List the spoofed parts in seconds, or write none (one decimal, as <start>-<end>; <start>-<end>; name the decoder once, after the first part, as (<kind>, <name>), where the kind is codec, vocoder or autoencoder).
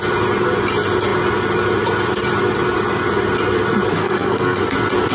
4.0-4.6 (codec, SNAC)